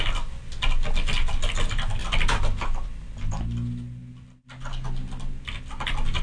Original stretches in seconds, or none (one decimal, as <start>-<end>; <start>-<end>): 0.0-6.2